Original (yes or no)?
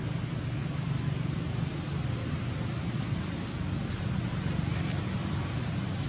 yes